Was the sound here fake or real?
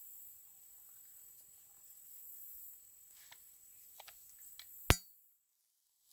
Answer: real